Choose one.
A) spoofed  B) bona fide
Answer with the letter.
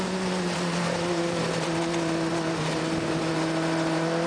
A